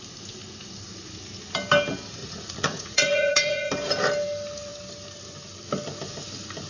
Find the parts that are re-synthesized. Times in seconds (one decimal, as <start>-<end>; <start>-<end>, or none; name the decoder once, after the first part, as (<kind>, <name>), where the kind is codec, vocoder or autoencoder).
2.2-3.7 (vocoder, Vocos)